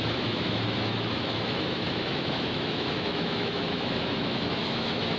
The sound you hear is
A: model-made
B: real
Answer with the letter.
A